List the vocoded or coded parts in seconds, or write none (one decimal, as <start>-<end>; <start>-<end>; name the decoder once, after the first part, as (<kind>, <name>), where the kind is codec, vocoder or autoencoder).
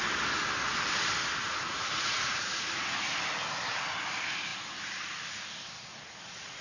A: 1.4-3.1 (vocoder, Vocos); 5.9-6.6